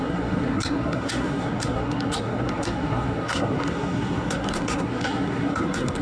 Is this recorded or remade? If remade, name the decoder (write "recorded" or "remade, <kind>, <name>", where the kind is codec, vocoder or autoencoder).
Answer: remade, codec, SNAC